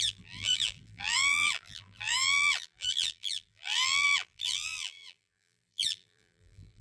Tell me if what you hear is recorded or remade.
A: remade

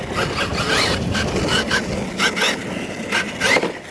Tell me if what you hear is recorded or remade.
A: recorded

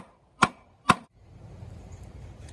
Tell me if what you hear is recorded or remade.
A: remade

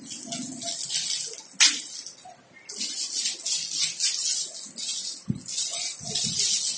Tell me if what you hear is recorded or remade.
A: recorded